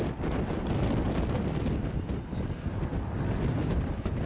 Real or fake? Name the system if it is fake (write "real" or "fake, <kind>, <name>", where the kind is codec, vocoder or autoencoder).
real